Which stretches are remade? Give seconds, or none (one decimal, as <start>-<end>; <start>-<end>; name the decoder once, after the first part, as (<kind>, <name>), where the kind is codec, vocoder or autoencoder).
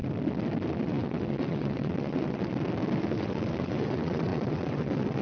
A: 0.8-2.5 (vocoder, WaveNeXt); 3.0-5.2